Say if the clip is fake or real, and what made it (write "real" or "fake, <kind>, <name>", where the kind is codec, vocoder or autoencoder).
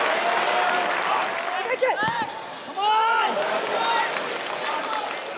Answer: real